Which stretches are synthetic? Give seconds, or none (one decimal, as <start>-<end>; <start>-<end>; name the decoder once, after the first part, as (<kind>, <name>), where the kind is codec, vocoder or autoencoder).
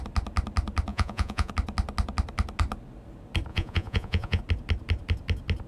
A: 0.9-1.5 (vocoder, Vocos); 3.5-4.4